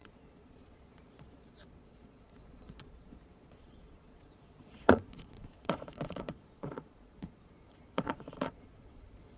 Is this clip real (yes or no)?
no